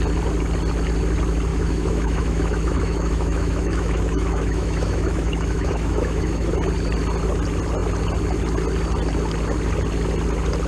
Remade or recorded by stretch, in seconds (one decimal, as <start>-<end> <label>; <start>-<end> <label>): 0.0-1.5 recorded; 1.5-6.5 remade; 6.5-10.7 recorded